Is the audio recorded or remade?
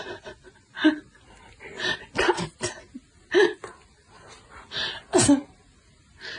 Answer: recorded